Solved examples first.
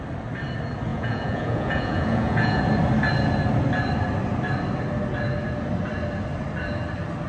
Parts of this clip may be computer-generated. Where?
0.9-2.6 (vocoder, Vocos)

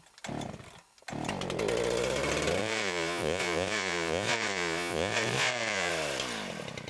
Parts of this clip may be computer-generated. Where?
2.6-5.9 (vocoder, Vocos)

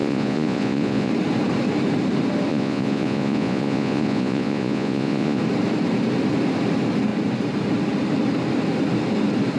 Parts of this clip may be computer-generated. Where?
0.0-1.1 (vocoder, Vocos); 2.5-5.4

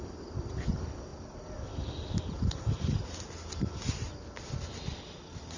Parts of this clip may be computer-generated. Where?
none